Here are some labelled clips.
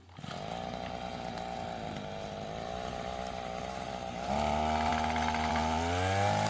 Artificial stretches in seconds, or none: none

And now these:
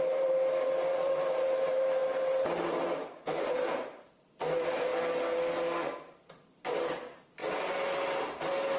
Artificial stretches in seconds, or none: 0.0-4.9 (vocoder, BigVGAN v2); 5.9-7.4